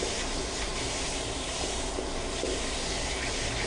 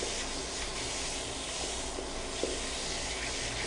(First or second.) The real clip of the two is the second